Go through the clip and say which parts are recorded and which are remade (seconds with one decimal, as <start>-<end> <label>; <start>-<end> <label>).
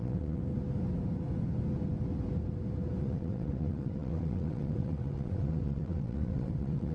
0.0-0.4 remade; 0.4-3.0 recorded; 3.0-6.9 remade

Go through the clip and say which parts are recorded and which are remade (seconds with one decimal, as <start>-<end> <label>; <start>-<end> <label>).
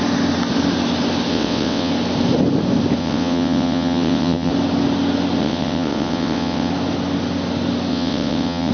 0.0-1.3 recorded; 1.3-1.9 remade; 1.9-3.0 recorded; 3.0-4.5 remade; 4.5-5.4 recorded; 5.4-6.7 remade; 6.7-7.9 recorded; 7.9-8.7 remade